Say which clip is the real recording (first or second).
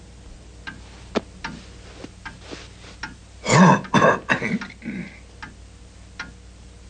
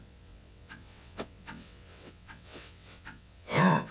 first